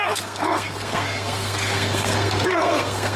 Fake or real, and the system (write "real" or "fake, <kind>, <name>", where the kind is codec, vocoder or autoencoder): fake, codec, SNAC